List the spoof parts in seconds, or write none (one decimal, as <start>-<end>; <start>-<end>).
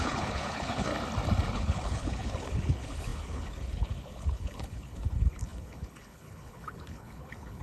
0.0-0.9; 1.5-7.6